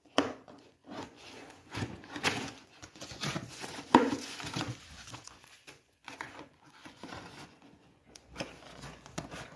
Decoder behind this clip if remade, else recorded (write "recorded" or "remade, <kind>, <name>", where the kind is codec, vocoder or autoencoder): remade, vocoder, Vocos